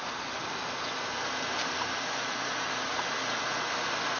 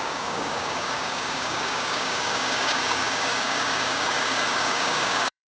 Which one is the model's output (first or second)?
second